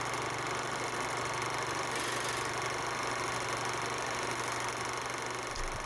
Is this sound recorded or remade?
recorded